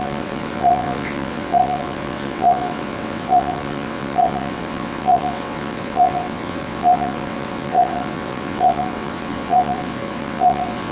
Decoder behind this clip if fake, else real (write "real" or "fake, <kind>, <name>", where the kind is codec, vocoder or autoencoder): fake, vocoder, WaveNeXt